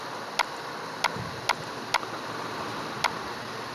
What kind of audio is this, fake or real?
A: real